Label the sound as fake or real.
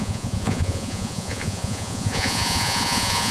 fake